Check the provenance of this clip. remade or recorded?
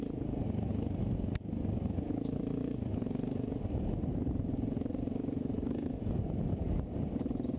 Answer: remade